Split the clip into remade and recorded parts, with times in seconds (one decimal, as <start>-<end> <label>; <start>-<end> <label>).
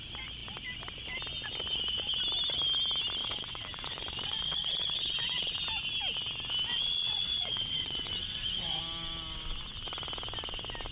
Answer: 0.0-3.2 recorded; 3.2-5.6 remade; 5.6-6.7 recorded; 6.7-8.8 remade; 8.8-10.9 recorded